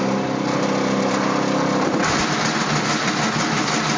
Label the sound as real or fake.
real